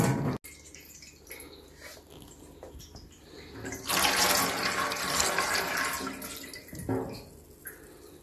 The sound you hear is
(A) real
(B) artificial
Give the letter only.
A